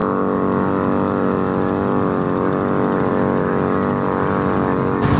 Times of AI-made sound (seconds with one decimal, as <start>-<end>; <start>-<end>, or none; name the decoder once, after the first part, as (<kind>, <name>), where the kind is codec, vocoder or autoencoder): none